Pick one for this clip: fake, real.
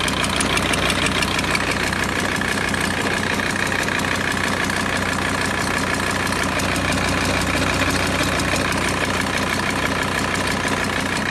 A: real